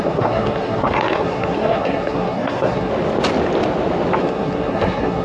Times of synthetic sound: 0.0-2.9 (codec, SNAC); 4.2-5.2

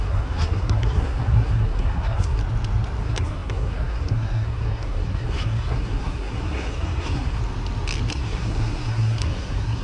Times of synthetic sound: 0.0-2.4 (codec, SNAC); 3.0-7.4; 8.1-9.8

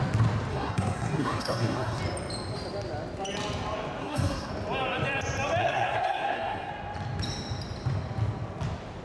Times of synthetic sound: 0.5-2.0 (codec, SNAC); 4.0-4.5; 5.6-6.7

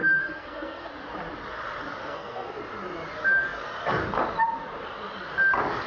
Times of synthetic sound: 0.0-0.9 (codec, SNAC); 2.0-2.6